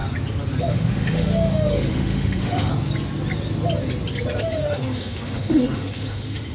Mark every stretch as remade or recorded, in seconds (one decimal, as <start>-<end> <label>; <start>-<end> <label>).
0.0-0.7 recorded; 0.7-2.7 remade; 2.7-4.4 recorded; 4.4-6.5 remade